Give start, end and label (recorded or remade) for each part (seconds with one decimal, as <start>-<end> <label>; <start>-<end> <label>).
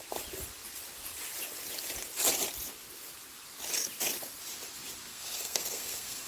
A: 0.0-5.1 recorded; 5.1-6.3 remade